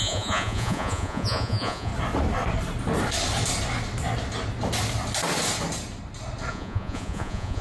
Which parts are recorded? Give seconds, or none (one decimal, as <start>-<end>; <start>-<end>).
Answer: 1.9-6.5